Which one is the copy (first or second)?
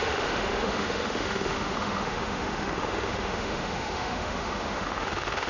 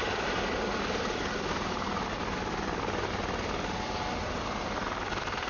first